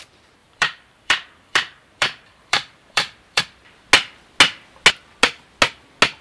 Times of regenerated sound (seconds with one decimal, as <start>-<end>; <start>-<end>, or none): 0.4-3.4